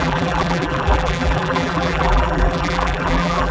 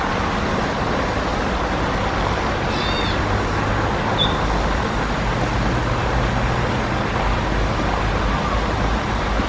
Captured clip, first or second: second